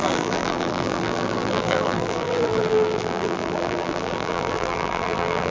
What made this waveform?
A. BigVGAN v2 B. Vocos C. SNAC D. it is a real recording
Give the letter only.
A